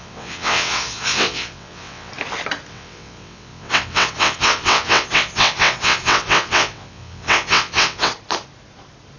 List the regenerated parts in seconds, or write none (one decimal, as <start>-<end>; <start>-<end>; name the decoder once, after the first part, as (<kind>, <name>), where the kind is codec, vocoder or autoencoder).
0.0-2.1 (vocoder, WaveNeXt); 2.7-8.1